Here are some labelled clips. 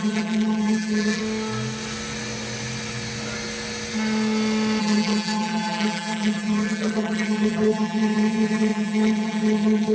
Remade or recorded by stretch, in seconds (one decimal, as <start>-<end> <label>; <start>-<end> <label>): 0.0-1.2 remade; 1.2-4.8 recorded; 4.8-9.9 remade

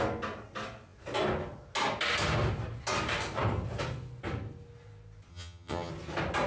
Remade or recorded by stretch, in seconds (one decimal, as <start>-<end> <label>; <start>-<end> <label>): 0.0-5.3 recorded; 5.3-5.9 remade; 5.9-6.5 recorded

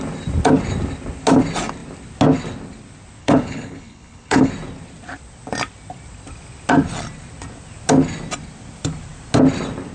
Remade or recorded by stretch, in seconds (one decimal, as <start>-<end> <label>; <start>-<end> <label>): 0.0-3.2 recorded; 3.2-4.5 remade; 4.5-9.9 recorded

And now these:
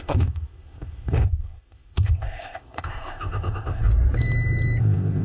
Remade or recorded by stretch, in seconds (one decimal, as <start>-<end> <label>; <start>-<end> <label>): 0.0-3.9 remade; 3.9-4.8 recorded; 4.8-5.2 remade

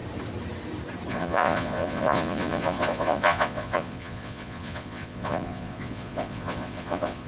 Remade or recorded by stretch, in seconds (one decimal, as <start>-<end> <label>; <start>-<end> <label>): 0.0-1.1 recorded; 1.1-7.3 remade